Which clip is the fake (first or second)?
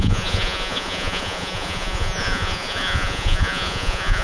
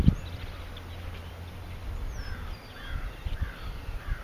first